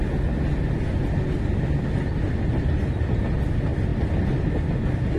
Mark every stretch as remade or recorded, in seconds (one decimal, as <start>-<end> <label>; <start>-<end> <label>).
0.0-3.9 recorded; 3.9-4.5 remade; 4.5-5.2 recorded